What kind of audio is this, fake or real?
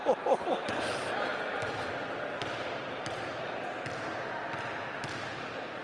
real